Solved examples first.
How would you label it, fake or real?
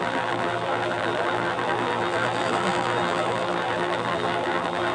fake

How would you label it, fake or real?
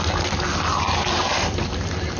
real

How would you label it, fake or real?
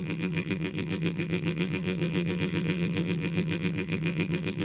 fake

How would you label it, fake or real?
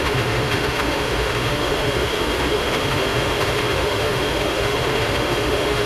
fake